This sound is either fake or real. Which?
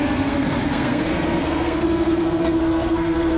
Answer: fake